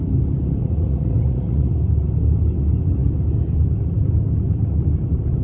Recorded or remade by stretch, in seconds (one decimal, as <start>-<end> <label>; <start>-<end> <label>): 0.0-0.6 recorded; 0.6-1.7 remade; 1.7-5.4 recorded